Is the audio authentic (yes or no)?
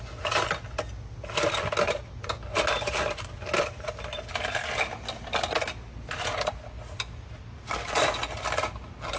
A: yes